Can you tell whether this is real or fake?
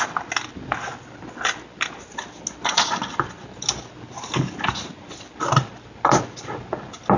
real